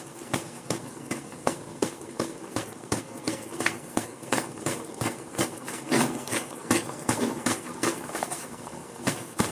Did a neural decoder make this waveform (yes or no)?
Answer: yes